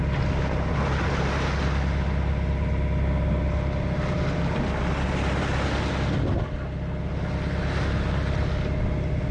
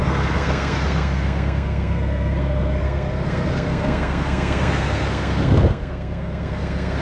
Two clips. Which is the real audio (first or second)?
first